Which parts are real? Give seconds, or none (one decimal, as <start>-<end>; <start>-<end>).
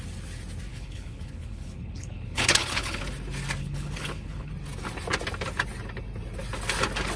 0.0-0.7; 3.0-3.6; 4.5-7.2